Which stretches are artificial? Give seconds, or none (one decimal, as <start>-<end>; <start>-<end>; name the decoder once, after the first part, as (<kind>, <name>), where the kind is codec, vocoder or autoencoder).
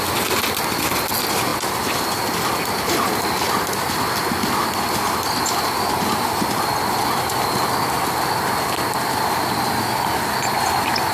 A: none